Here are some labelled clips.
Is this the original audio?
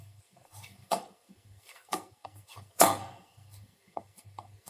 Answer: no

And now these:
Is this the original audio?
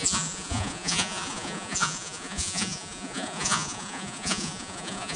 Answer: no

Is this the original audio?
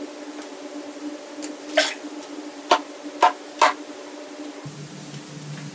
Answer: yes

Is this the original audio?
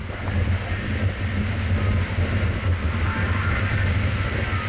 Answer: yes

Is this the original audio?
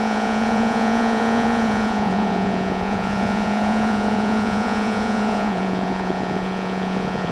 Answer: no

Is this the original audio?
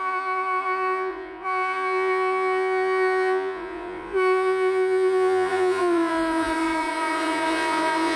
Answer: no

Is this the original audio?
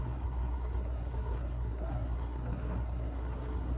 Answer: no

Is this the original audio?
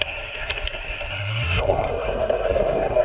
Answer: no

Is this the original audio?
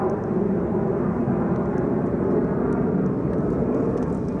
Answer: yes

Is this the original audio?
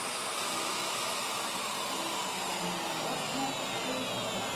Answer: yes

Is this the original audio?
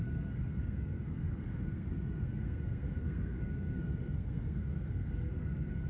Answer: no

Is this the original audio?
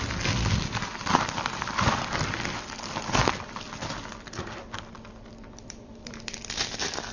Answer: no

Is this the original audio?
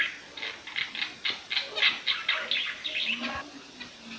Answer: yes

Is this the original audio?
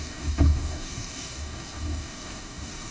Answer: no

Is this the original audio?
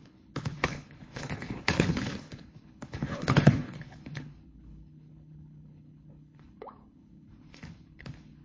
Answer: no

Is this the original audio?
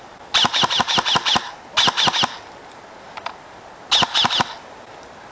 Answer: yes